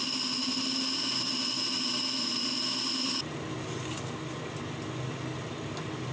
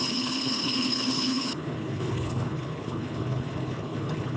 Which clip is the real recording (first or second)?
first